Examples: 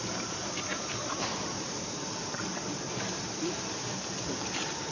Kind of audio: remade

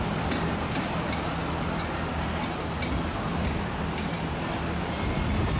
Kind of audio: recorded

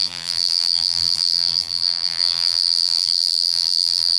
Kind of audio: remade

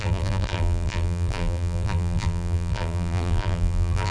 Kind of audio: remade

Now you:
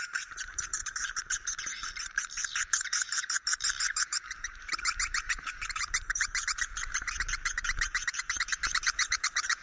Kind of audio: remade